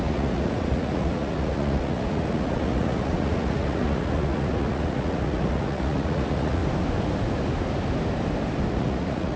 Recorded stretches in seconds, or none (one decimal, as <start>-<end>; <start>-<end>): 6.6-8.7